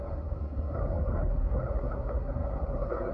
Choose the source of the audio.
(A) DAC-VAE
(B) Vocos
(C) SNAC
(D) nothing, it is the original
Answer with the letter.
C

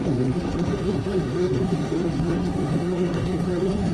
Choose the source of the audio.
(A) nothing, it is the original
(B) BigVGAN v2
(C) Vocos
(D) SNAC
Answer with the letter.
D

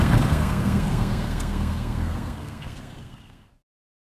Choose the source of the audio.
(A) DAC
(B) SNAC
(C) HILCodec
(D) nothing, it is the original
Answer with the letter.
B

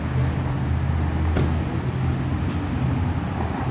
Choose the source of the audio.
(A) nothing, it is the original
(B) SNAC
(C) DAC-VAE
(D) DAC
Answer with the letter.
A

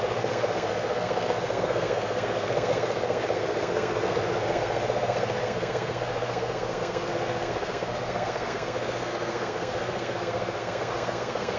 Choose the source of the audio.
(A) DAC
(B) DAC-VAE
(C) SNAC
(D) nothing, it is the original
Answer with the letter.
C